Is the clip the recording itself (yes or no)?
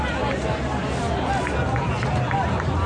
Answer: yes